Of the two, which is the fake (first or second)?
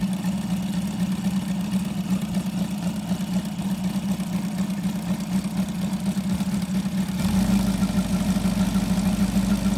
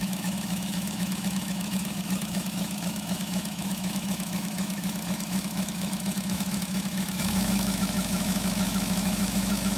second